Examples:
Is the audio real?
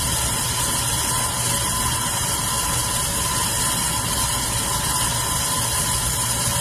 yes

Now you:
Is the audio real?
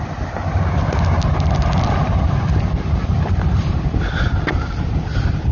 yes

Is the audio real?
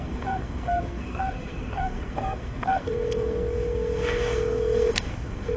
no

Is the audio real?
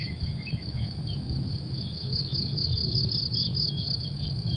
no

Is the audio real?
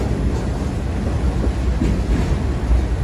yes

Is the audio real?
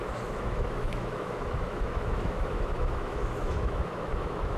no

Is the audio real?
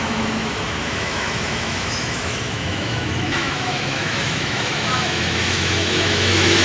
no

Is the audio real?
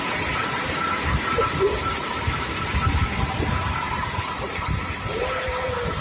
no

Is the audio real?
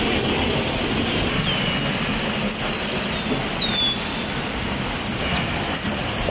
yes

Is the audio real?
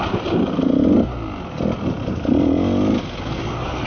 yes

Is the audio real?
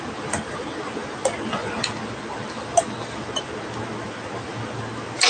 yes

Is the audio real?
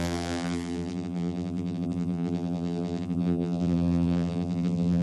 no